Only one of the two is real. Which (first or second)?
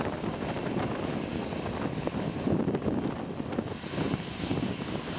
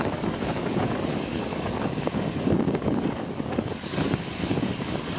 first